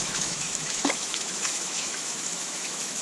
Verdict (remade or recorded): remade